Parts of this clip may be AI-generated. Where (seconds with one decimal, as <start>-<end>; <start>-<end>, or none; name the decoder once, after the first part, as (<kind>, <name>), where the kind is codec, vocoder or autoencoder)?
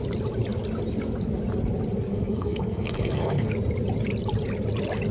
2.1-3.5 (codec, SNAC)